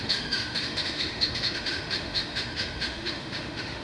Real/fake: fake